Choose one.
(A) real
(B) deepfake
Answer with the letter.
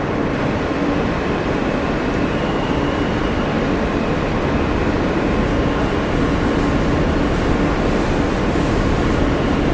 A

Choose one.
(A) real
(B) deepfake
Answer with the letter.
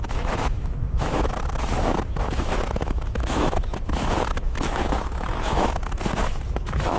B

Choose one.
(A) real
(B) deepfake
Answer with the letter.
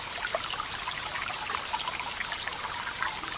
A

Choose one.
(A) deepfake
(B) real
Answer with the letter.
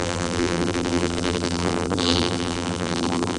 A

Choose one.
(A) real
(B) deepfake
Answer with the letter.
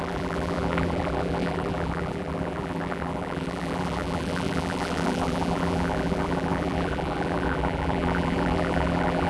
B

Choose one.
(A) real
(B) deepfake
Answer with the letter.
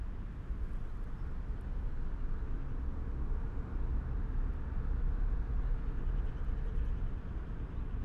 A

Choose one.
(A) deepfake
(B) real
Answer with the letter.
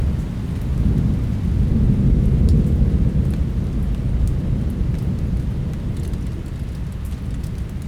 B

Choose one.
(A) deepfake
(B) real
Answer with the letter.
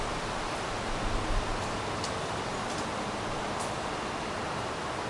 B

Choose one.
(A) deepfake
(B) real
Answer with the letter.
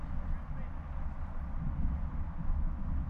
B